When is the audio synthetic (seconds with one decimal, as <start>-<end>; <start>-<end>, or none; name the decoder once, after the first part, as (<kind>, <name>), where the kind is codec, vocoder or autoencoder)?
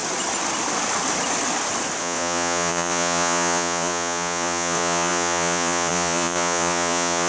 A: 2.0-7.3 (vocoder, Vocos)